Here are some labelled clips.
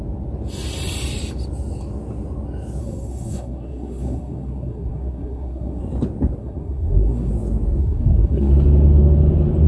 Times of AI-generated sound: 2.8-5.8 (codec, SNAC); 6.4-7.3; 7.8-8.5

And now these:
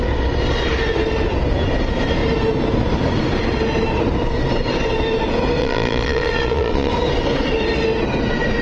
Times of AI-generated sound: 5.6-6.9 (vocoder, Vocos)

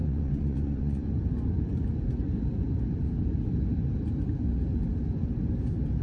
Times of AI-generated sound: 0.0-1.1 (vocoder, Vocos)

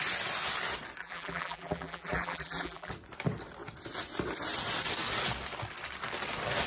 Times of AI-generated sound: 1.0-2.9 (vocoder, BigVGAN v2)

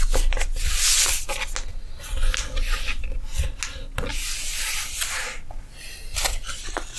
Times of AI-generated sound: none